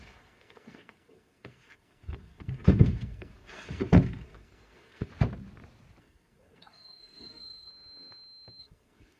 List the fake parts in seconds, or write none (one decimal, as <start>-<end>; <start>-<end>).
0.0-5.1; 6.0-7.7; 8.6-9.2